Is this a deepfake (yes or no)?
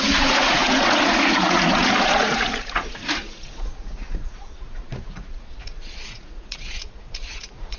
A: yes